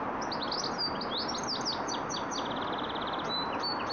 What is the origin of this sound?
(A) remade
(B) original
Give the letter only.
B